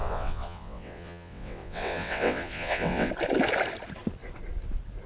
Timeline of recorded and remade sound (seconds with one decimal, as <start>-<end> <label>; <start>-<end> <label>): 0.0-3.1 remade; 3.1-5.1 recorded